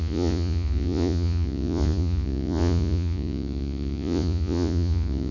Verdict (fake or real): fake